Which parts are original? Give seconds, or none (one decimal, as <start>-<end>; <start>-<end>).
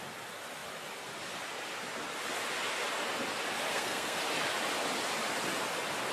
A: 0.0-3.7; 4.2-6.1